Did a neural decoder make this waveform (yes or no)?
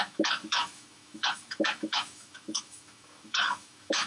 yes